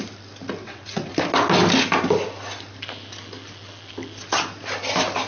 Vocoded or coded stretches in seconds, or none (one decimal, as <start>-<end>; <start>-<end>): 0.6-1.1